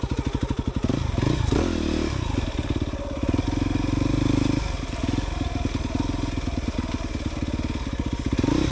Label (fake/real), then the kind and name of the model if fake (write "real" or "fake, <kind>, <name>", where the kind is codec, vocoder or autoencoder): real